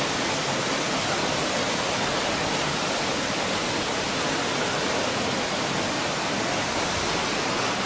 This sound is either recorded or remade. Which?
recorded